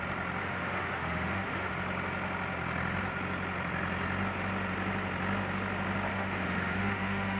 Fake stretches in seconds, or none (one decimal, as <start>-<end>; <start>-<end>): 0.4-1.7; 6.1-7.4